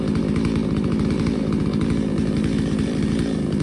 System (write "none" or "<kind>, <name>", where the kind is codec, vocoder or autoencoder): vocoder, BigVGAN v2